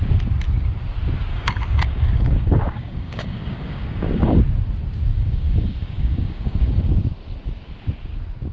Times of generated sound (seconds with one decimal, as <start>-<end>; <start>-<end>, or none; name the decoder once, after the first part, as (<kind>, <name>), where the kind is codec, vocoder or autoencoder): 1.3-4.4 (codec, DAC); 5.1-7.0